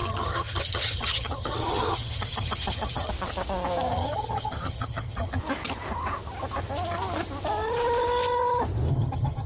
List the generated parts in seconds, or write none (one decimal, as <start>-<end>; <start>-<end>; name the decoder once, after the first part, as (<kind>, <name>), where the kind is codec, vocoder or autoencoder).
0.0-3.1 (vocoder, HiFi-GAN); 3.9-5.4; 8.9-9.5